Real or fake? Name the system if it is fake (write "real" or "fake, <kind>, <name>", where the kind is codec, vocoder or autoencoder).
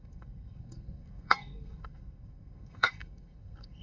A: fake, codec, SNAC